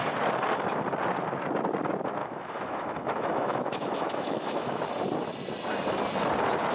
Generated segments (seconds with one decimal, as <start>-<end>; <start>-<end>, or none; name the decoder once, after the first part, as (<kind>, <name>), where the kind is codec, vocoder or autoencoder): 2.2-4.8 (autoencoder, DAC-VAE)

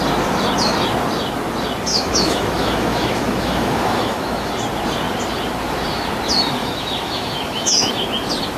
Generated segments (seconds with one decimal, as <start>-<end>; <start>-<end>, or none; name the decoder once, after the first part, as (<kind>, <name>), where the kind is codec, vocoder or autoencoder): 1.9-4.5 (autoencoder, DAC-VAE); 6.6-7.9

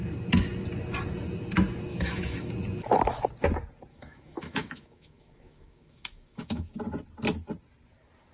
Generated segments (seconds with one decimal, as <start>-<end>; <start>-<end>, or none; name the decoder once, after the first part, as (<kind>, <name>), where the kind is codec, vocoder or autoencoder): 1.9-2.5 (autoencoder, DAC-VAE); 3.9-6.8

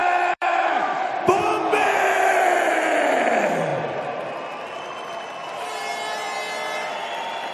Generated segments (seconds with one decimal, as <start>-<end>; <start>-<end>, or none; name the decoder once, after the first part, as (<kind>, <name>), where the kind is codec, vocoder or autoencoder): 0.0-1.1 (autoencoder, DAC-VAE)